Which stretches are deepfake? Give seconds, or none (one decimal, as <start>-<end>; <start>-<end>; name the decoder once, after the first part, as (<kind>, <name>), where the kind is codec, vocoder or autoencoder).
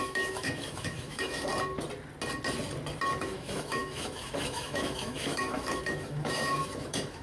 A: 0.0-1.5 (autoencoder, DAC-VAE); 3.2-7.2